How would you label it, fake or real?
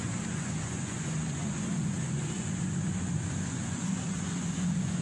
fake